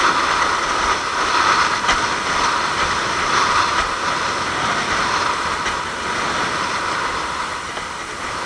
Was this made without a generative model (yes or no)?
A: yes